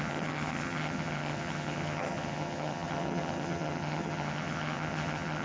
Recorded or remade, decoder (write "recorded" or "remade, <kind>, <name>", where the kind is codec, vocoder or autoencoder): remade, vocoder, HiFi-GAN